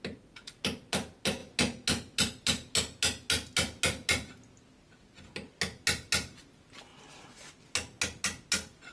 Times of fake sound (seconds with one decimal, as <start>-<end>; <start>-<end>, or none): none